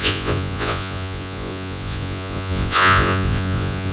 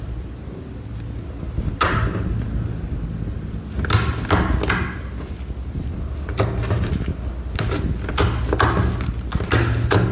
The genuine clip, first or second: second